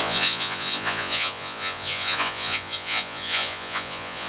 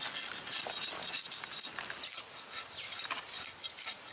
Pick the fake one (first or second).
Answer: first